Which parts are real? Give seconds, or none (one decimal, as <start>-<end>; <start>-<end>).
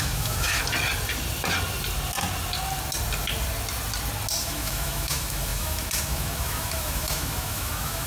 0.6-4.4